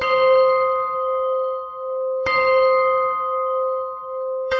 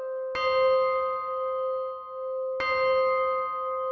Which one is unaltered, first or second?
second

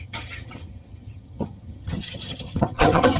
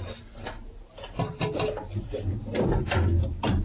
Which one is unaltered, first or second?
second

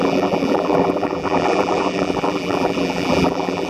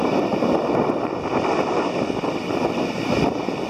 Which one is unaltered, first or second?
second